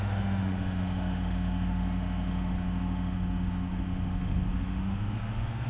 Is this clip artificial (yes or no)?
yes